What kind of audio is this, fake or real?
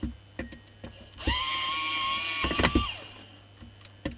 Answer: real